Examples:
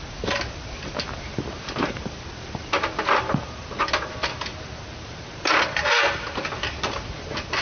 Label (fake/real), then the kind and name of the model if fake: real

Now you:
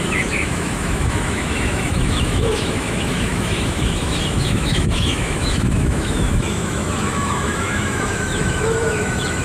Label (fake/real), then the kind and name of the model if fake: fake, autoencoder, DAC-VAE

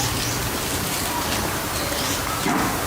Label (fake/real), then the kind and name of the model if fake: real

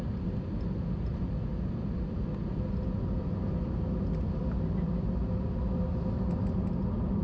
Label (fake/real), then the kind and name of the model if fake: real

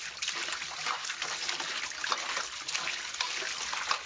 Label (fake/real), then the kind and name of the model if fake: real